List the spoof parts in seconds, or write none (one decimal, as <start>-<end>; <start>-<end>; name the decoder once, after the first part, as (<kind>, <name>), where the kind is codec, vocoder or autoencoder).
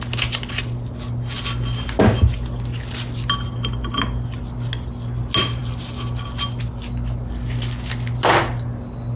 none